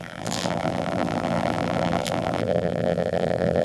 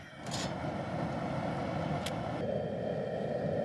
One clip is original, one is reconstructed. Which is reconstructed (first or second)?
first